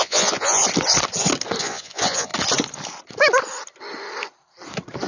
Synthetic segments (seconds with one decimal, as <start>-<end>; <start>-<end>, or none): 0.0-0.6; 1.6-2.3